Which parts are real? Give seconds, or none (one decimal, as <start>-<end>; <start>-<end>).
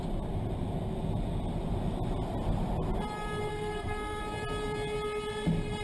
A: 0.0-3.5; 4.2-5.8